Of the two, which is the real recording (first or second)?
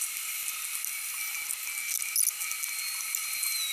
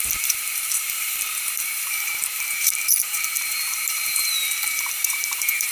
first